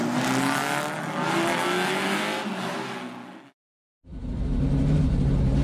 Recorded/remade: recorded